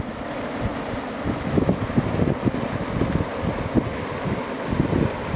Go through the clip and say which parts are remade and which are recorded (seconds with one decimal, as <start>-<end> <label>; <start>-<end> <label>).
0.0-5.4 recorded